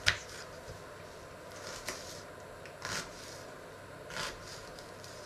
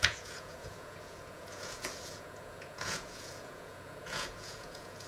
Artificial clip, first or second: second